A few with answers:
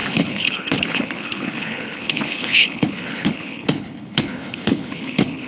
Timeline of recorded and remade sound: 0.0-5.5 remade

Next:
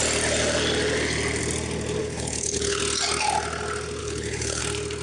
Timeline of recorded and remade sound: 0.0-2.0 recorded; 2.0-2.8 remade; 2.8-4.0 recorded; 4.0-4.6 remade; 4.6-5.0 recorded

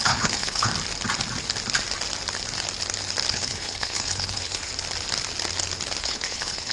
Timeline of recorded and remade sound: 0.0-0.7 remade; 0.7-3.3 recorded; 3.3-4.7 remade; 4.7-6.0 recorded; 6.0-6.7 remade